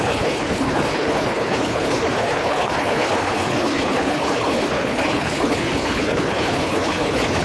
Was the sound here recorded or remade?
remade